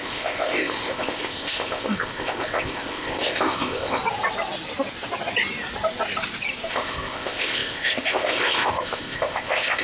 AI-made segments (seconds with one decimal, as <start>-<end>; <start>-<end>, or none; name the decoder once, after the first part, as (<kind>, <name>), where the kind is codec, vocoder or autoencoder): 0.0-4.0 (codec, ZipCodec); 6.7-9.8